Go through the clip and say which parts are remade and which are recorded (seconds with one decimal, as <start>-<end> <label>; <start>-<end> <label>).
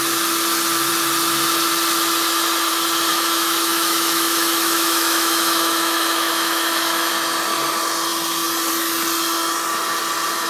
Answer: 0.0-3.1 recorded; 3.1-7.1 remade; 7.1-10.5 recorded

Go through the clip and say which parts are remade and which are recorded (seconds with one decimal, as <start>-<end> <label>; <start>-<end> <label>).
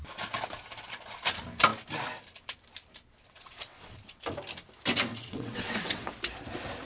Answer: 0.0-3.2 recorded; 3.2-4.2 remade; 4.2-5.1 recorded; 5.1-6.1 remade; 6.1-6.9 recorded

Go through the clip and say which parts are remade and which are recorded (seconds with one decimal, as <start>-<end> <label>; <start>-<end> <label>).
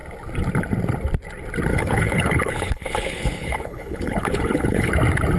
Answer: 0.0-1.7 recorded; 1.7-4.9 remade; 4.9-5.4 recorded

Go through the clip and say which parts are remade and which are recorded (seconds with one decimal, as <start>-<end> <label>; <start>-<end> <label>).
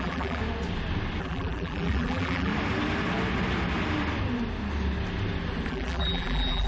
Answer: 0.0-0.4 remade; 0.4-1.2 recorded; 1.2-2.5 remade; 2.5-5.7 recorded; 5.7-6.7 remade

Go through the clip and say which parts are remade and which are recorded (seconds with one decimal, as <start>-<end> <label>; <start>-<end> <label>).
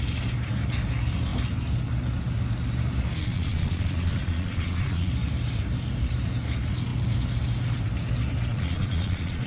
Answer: 0.0-3.2 recorded; 3.2-5.1 remade; 5.1-8.5 recorded; 8.5-9.5 remade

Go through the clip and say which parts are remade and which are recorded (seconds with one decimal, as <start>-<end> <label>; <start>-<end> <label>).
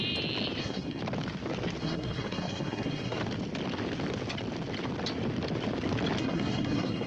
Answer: 0.0-0.6 recorded; 0.6-1.0 remade; 1.0-1.8 recorded; 1.8-3.2 remade; 3.2-6.2 recorded; 6.2-7.1 remade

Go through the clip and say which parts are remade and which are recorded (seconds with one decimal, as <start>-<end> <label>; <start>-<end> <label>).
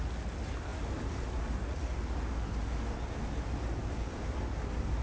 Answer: 0.0-5.0 recorded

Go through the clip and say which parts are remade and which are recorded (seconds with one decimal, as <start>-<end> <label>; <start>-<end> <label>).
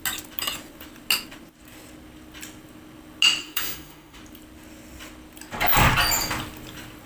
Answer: 0.0-3.4 recorded; 3.4-4.2 remade; 4.2-7.1 recorded